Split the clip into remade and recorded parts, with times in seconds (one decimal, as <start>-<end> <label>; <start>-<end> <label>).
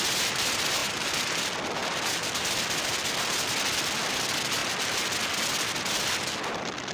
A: 0.0-0.8 recorded; 0.8-1.4 remade; 1.4-6.9 recorded